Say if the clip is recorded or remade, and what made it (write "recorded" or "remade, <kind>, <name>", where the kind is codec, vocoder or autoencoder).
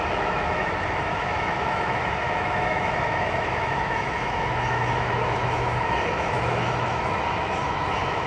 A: remade, autoencoder, DAC-VAE